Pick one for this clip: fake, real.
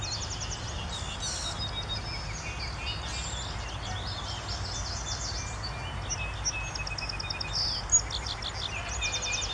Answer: real